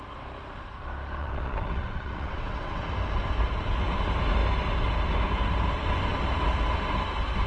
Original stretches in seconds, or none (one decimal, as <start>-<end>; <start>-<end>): 0.0-1.2; 2.8-7.5

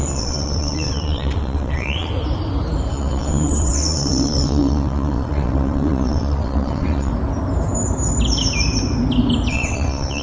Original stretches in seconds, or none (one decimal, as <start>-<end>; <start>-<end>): 2.1-2.9; 7.1-9.5